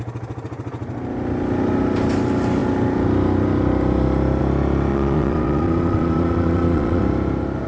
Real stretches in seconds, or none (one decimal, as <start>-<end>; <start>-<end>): 0.0-4.9; 7.0-7.7